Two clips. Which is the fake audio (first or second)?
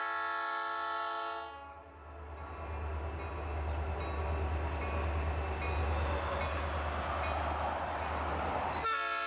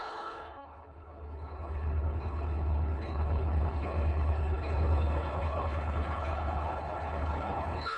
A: second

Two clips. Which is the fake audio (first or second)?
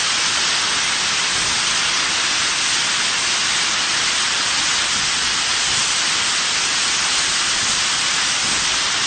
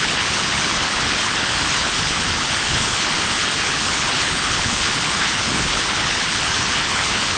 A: second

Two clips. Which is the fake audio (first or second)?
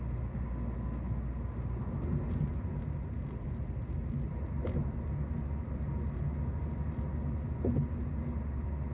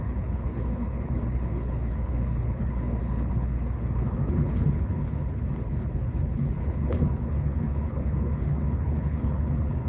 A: second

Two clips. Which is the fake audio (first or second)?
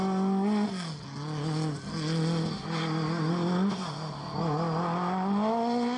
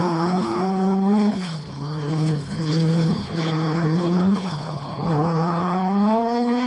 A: second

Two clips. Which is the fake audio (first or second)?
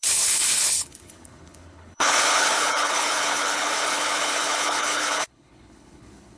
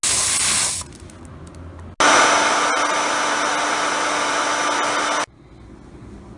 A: first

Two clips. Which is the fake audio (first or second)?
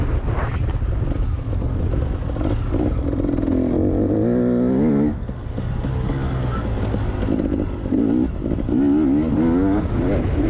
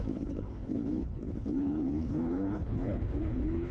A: second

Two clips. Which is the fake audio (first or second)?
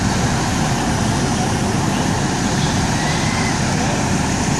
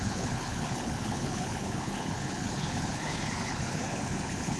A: second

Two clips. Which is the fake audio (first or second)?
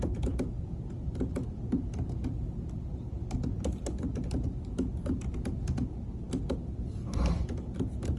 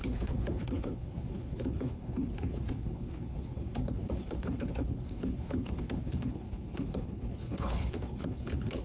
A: second